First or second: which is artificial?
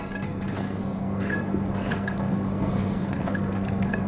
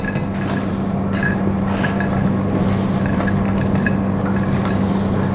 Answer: first